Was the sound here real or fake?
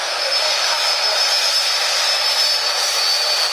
real